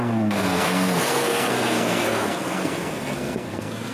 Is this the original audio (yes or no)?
no